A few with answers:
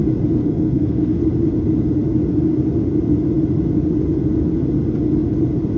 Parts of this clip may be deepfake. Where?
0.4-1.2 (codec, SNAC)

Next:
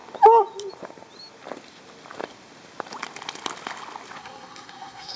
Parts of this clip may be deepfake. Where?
4.2-5.2 (codec, SNAC)

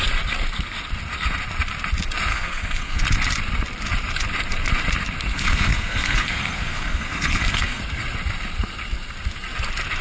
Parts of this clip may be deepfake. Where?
2.3-3.0 (codec, SNAC); 5.3-7.8

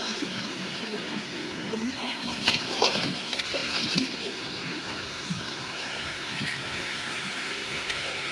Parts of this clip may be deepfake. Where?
0.0-8.3 (codec, SNAC)

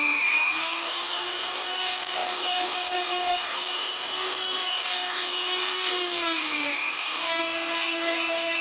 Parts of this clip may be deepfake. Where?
0.0-8.6 (codec, DAC)

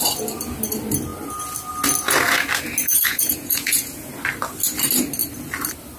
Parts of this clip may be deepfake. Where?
2.8-4.1 (vocoder, Vocos)